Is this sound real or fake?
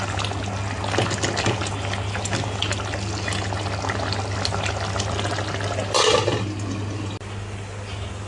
real